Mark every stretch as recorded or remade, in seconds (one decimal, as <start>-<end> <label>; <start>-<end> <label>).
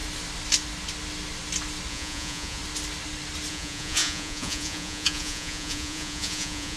0.0-1.9 recorded; 1.9-2.6 remade; 2.6-3.5 recorded; 3.5-6.8 remade